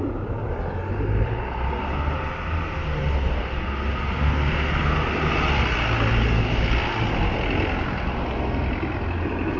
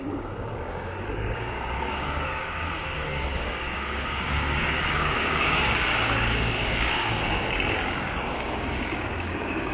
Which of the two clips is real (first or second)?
first